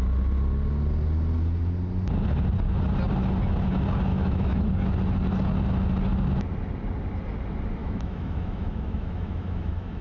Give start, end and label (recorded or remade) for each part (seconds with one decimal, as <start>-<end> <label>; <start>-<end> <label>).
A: 0.0-4.1 recorded; 4.1-4.6 remade; 4.6-7.8 recorded; 7.8-10.0 remade